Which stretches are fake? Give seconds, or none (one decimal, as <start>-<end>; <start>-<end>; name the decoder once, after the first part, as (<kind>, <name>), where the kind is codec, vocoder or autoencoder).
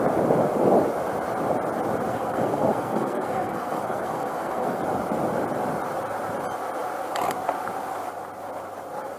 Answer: 2.1-4.8 (codec, SNAC)